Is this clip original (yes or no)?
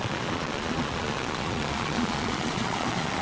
no